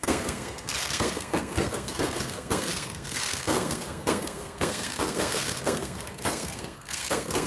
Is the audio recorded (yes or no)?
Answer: no